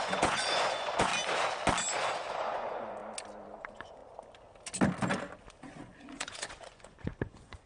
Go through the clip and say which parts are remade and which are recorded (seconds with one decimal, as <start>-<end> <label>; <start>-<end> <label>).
0.0-1.1 remade; 1.1-2.3 recorded; 2.3-3.0 remade; 3.0-3.6 recorded; 3.6-4.0 remade; 4.0-5.6 recorded; 5.6-7.7 remade